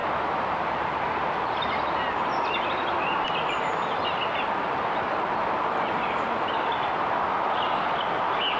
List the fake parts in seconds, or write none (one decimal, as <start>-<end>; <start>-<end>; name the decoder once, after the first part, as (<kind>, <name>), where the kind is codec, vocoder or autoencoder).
none